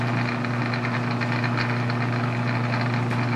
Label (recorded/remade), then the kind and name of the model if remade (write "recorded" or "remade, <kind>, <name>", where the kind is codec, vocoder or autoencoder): recorded